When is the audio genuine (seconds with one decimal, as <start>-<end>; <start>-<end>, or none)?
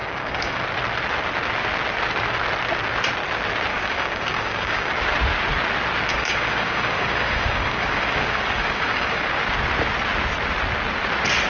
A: 0.6-3.7; 4.9-6.1; 9.2-11.5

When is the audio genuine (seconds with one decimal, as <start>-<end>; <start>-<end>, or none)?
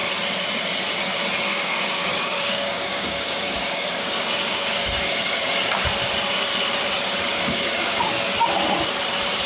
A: 0.0-1.5; 5.7-7.3; 8.1-9.5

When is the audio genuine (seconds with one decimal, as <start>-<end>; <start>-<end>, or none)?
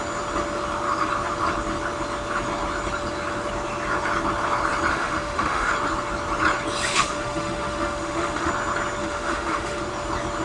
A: 0.0-4.9; 5.7-6.9; 8.5-9.0; 9.8-10.4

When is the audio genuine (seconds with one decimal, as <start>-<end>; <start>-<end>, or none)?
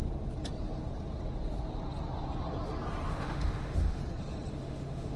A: 0.0-3.1; 4.0-4.5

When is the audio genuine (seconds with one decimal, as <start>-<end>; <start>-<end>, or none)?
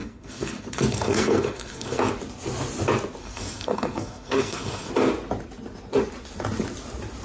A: 2.1-3.2; 4.9-7.2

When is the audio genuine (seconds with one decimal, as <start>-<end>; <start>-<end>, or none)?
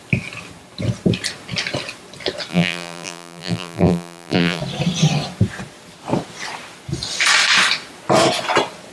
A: 0.0-2.5; 4.6-8.9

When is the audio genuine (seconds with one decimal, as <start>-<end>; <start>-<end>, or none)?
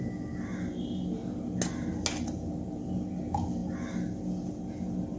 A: 0.0-5.2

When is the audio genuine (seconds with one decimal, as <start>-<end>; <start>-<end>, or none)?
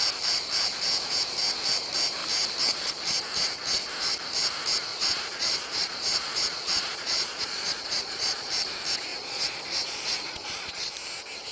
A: 0.0-4.9; 8.5-9.1; 10.9-11.5